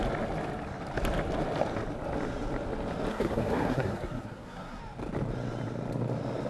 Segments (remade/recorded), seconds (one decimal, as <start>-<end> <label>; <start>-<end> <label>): 0.0-3.1 recorded; 3.1-4.8 remade; 4.8-6.5 recorded